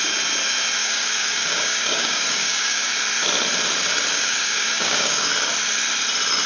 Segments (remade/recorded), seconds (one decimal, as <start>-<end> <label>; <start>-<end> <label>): 0.0-0.8 recorded; 0.8-2.9 remade; 2.9-4.1 recorded; 4.1-5.3 remade; 5.3-6.5 recorded